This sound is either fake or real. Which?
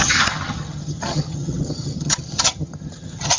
fake